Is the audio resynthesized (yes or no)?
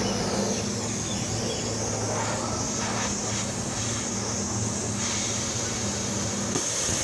no